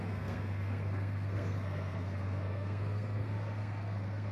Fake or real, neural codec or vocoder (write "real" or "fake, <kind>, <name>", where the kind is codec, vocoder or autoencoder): fake, codec, SNAC